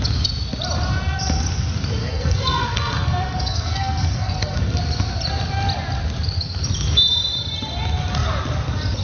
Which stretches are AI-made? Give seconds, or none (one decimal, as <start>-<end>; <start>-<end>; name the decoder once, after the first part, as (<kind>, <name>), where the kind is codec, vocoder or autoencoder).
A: 2.0-4.8 (codec, SNAC)